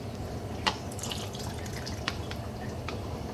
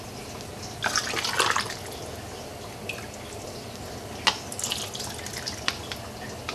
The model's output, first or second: first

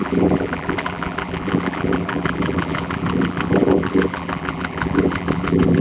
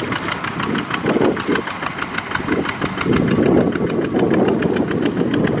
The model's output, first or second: first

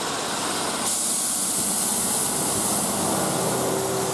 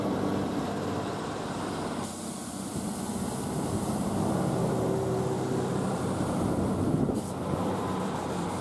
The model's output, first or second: second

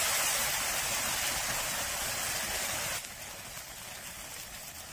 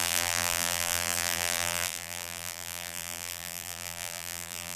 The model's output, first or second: second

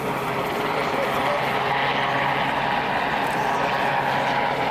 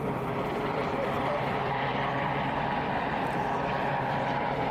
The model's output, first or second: second